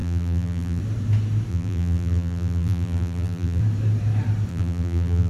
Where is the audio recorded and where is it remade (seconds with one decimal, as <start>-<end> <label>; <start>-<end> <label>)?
0.0-0.8 remade; 0.8-1.5 recorded; 1.5-3.6 remade; 3.6-4.5 recorded; 4.5-5.3 remade